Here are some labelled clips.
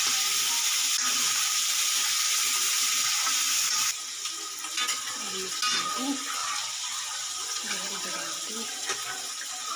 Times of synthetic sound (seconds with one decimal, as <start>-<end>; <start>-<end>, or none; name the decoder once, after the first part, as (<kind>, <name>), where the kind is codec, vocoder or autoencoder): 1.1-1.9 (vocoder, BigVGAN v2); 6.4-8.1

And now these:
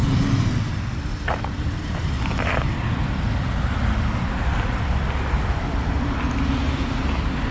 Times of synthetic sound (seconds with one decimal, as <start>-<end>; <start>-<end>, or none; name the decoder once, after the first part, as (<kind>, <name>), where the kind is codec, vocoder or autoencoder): none

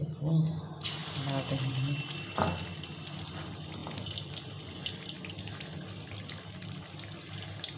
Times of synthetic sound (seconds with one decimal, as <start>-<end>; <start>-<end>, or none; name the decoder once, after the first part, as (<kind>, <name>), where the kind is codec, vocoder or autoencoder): none

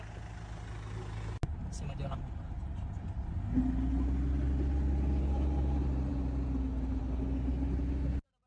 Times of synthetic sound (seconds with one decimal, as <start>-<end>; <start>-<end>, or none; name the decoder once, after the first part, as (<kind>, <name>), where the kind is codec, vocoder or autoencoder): none

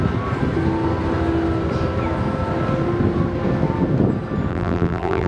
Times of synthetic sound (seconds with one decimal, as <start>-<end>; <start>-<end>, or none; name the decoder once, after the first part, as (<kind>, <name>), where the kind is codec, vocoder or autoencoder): 4.5-5.3 (vocoder, BigVGAN v2)

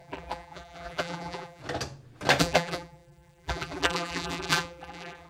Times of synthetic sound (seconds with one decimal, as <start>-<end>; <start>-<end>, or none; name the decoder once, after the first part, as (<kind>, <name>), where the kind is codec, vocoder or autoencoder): 0.0-1.6 (vocoder, BigVGAN v2); 2.4-5.3